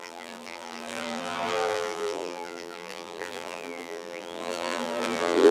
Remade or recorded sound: remade